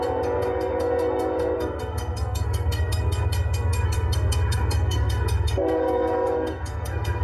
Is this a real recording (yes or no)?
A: no